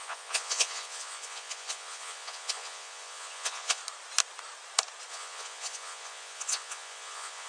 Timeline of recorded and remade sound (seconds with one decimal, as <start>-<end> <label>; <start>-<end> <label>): 0.0-3.8 remade; 3.8-5.1 recorded; 5.1-7.5 remade